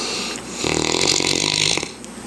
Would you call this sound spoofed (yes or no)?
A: no